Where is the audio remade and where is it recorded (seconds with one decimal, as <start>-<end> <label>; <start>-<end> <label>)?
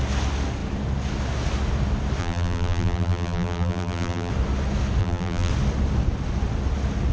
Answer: 0.0-2.2 recorded; 2.2-4.3 remade; 4.3-5.0 recorded; 5.0-5.5 remade; 5.5-7.1 recorded